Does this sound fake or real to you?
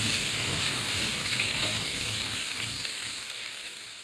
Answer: fake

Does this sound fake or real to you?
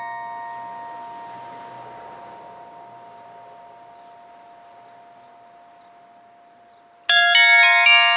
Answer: real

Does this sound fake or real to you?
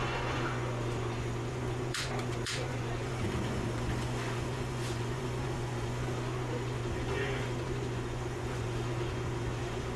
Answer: fake